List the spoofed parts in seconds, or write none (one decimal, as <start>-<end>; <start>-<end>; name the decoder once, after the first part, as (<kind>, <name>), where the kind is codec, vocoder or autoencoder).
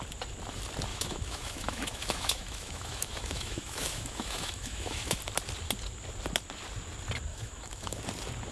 0.9-5.2 (autoencoder, DAC-VAE); 7.3-8.0